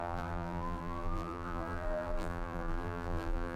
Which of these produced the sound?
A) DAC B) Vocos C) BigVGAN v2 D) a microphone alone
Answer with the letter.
C